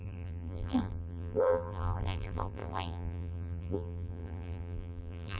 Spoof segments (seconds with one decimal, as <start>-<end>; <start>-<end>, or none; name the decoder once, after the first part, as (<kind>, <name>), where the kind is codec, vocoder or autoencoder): 0.0-5.4 (vocoder, BigVGAN v2)